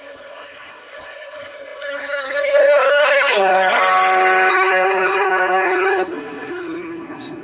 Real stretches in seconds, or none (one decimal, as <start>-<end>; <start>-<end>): 3.8-4.5